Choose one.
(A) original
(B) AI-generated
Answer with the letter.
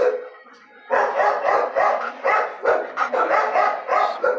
A